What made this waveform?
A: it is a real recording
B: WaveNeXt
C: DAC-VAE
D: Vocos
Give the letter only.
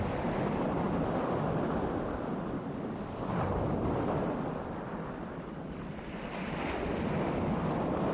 A